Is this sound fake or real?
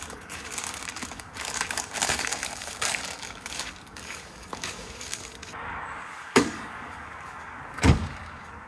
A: fake